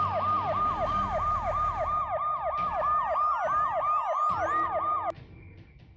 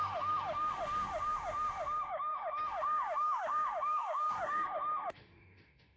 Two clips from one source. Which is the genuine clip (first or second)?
first